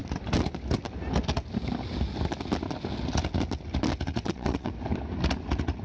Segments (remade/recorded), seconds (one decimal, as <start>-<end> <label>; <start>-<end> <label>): 0.0-4.1 recorded; 4.1-4.7 remade; 4.7-5.8 recorded